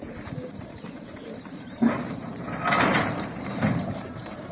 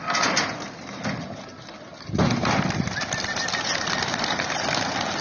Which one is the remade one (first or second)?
first